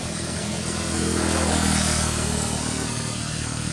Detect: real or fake fake